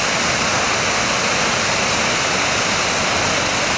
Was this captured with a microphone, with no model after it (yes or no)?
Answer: yes